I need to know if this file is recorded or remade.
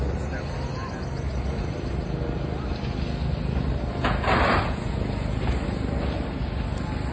recorded